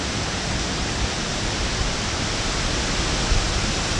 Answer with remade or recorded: recorded